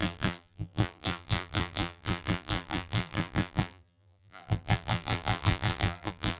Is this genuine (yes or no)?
no